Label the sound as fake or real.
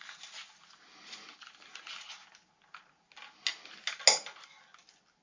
real